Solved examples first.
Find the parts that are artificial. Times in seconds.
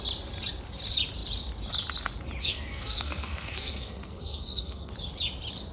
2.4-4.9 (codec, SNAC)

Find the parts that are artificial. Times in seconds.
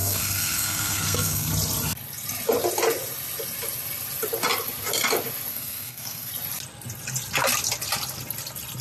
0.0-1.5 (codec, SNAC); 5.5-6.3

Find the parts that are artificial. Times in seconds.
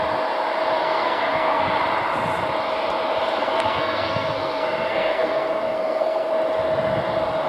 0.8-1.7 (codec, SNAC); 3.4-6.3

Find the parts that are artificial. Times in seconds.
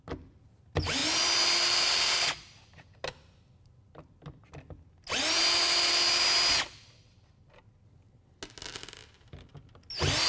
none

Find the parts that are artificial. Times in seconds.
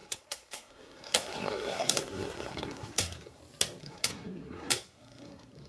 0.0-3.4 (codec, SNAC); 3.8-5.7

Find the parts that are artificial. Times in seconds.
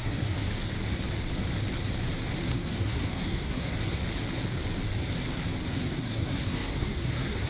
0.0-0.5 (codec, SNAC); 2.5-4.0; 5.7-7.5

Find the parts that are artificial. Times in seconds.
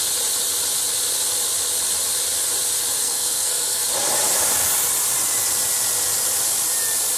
3.0-3.8 (codec, SNAC)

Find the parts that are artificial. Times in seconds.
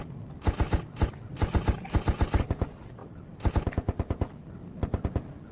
none